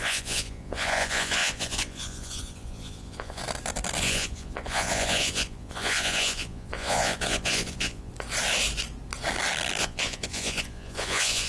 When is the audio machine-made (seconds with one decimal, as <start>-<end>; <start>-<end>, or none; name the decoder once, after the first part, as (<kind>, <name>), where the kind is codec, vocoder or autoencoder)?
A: 0.0-3.4 (vocoder, Vocos); 4.0-8.1; 9.8-11.5